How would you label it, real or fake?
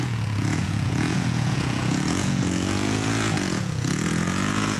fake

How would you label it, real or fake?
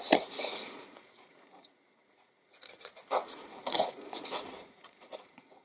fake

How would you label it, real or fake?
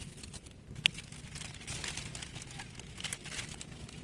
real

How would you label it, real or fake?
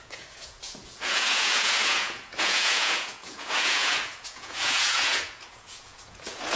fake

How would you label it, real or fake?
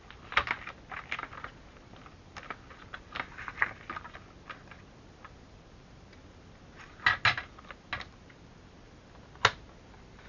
real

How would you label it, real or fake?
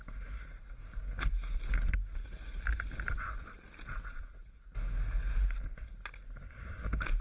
real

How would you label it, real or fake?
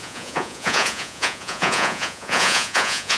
fake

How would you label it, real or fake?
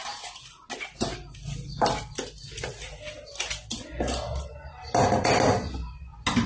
real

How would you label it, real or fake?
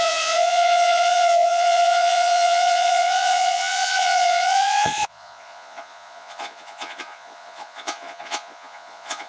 fake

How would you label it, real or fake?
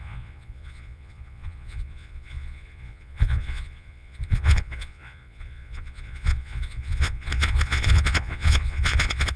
fake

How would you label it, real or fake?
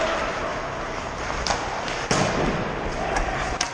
real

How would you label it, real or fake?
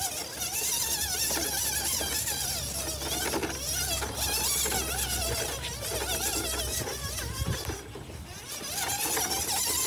real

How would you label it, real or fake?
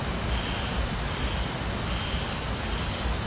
real